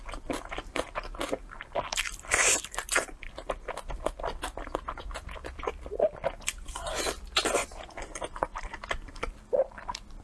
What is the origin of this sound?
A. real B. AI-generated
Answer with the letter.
B